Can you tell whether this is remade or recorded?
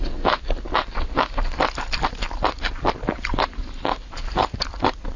recorded